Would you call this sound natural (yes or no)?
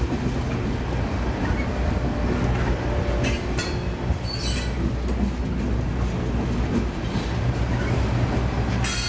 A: yes